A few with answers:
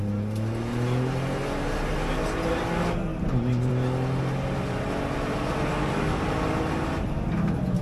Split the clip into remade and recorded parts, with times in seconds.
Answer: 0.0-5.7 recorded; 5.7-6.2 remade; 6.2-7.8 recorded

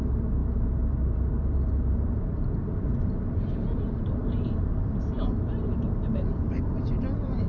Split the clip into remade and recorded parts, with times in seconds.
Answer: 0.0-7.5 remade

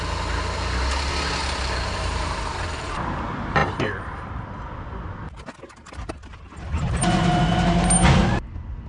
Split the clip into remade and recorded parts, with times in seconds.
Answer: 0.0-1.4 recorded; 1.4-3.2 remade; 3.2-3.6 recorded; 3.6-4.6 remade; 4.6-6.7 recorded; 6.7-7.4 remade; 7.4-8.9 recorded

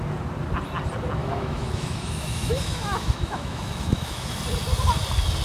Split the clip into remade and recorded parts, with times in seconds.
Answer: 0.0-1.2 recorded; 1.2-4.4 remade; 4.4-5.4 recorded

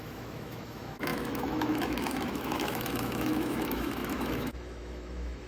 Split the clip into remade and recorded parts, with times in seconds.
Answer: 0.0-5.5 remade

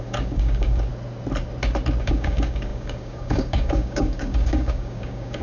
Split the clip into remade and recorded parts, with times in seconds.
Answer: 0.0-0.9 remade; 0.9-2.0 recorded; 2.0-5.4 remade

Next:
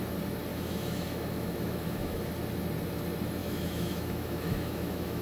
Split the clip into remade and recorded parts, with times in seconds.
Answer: 0.0-0.5 recorded; 0.5-2.3 remade; 2.3-3.4 recorded; 3.4-5.2 remade

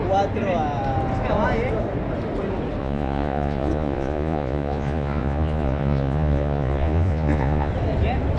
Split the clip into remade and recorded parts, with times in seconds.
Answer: 0.0-2.8 recorded; 2.8-7.7 remade; 7.7-8.4 recorded